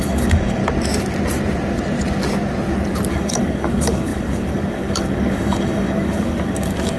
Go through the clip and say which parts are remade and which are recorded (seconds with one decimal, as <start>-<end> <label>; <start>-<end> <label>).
0.0-0.6 remade; 0.6-3.1 recorded; 3.1-7.0 remade